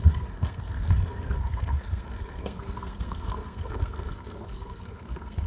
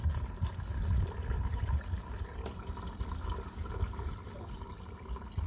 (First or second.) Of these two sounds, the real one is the second